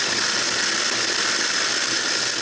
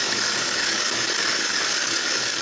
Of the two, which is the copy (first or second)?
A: second